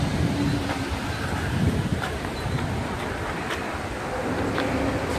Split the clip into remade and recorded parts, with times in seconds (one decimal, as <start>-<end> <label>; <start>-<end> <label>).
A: 0.0-5.2 recorded